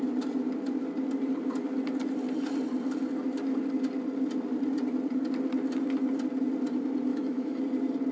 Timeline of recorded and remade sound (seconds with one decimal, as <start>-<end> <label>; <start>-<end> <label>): 0.0-7.1 recorded; 7.1-7.6 remade; 7.6-8.1 recorded

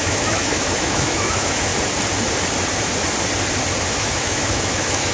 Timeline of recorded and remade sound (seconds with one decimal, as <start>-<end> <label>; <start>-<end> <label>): 0.0-1.7 remade; 1.7-4.0 recorded; 4.0-5.1 remade

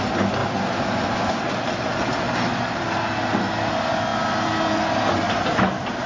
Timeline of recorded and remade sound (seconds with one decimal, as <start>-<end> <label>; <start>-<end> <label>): 0.0-6.1 recorded